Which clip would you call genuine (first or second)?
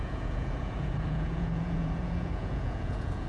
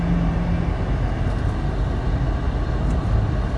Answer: second